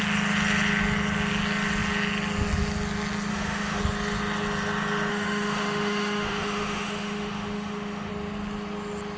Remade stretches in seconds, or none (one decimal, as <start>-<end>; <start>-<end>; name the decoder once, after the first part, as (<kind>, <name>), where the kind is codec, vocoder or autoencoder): 3.3-3.8 (autoencoder, DAC-VAE); 5.1-8.1